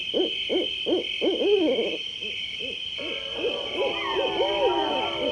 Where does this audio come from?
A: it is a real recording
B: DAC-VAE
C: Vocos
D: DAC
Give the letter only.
A